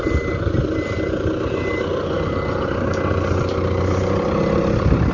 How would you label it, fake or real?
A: real